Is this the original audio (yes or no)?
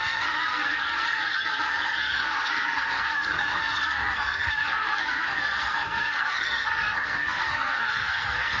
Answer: no